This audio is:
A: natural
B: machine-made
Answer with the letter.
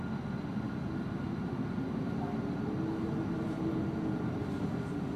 A